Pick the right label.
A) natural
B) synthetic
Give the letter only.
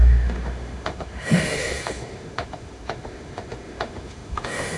B